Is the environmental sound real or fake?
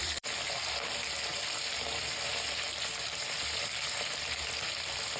fake